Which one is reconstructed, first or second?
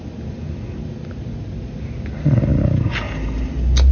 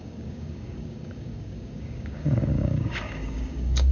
second